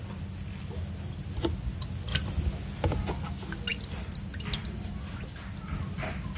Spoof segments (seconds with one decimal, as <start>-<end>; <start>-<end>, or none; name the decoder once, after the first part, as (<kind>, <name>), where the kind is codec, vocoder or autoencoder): none